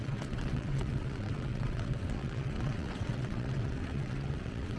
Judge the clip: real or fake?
fake